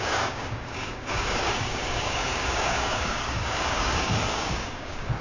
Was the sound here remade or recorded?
remade